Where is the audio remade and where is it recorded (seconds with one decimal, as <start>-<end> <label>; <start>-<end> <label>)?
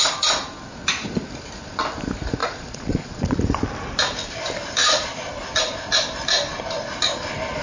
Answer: 0.0-2.4 recorded; 2.4-3.4 remade; 3.4-4.8 recorded; 4.8-5.3 remade; 5.3-7.6 recorded